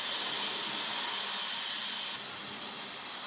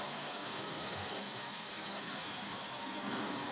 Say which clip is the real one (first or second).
first